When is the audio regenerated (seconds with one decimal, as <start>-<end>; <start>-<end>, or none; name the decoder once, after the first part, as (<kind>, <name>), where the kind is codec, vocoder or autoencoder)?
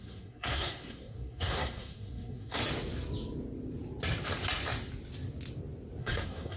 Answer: 0.0-2.6 (codec, SNAC); 6.0-6.6